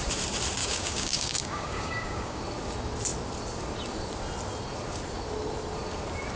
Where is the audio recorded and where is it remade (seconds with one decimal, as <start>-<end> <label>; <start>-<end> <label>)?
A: 0.0-0.6 recorded; 0.6-2.4 remade; 2.4-6.4 recorded